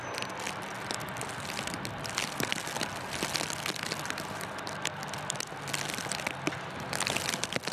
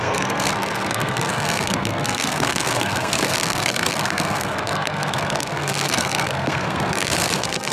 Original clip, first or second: first